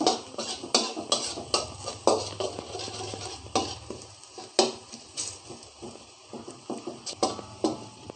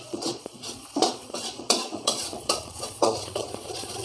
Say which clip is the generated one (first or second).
second